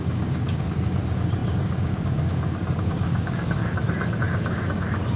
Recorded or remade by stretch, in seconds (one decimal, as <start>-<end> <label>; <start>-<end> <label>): 0.0-3.6 remade; 3.6-4.2 recorded; 4.2-5.2 remade